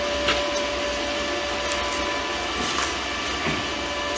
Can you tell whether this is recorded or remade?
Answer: recorded